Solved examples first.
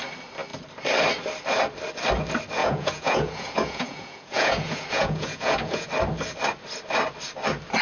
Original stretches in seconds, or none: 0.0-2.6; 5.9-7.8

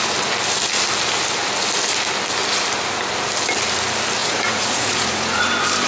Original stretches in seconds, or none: 0.0-4.2; 5.5-5.9

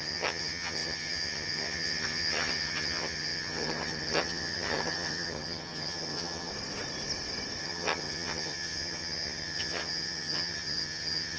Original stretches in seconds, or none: 6.5-7.6

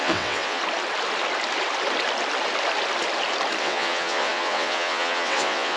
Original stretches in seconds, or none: 0.6-3.6

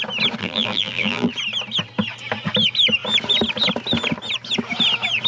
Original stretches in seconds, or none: 0.0-0.4; 1.3-5.3